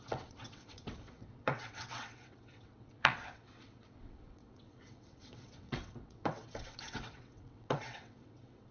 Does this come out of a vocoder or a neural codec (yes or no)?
yes